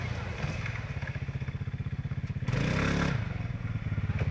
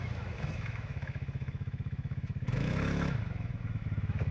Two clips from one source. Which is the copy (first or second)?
second